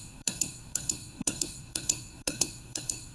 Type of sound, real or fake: fake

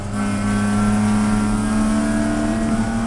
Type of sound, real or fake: real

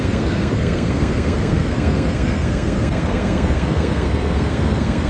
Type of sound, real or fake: fake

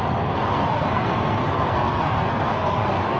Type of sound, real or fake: fake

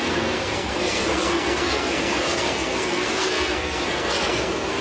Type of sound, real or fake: fake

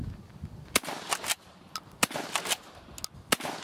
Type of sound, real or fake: real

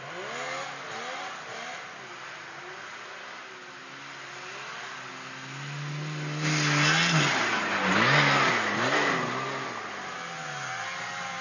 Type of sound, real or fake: real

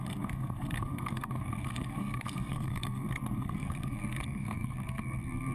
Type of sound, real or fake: fake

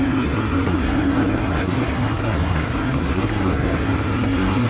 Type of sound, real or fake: fake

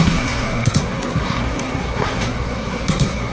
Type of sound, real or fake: fake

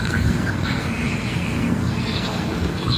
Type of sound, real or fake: fake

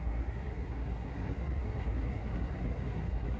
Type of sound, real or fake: fake